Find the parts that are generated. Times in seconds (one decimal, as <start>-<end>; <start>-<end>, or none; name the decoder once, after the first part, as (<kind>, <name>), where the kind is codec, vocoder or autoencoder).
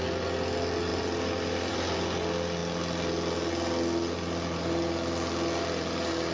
none